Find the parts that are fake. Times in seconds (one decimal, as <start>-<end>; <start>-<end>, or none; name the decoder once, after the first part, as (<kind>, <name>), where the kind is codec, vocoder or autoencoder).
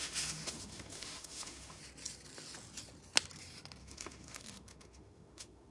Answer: 0.0-1.8 (autoencoder, DAC-VAE); 3.8-5.7